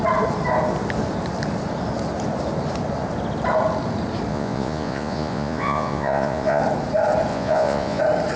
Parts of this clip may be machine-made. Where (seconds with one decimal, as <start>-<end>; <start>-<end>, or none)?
4.3-6.6; 7.3-8.0